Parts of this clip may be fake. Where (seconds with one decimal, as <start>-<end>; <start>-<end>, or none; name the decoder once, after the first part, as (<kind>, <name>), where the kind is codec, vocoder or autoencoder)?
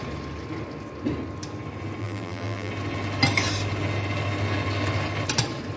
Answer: 2.0-2.7 (vocoder, BigVGAN v2)